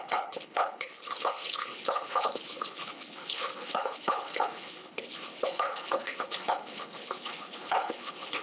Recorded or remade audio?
remade